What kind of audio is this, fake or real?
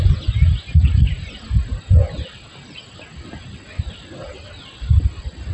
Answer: real